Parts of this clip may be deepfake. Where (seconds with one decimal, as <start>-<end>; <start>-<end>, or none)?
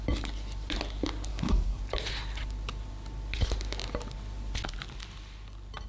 1.3-1.8